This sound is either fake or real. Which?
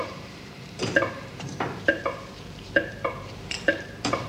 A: fake